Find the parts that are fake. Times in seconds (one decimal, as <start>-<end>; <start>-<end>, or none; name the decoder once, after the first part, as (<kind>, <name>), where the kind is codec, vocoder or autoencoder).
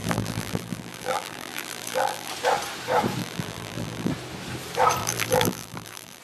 0.0-2.3 (vocoder, BigVGAN v2); 3.2-4.1; 5.0-6.2